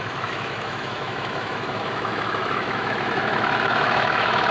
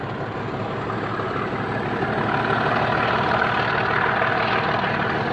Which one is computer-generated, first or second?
first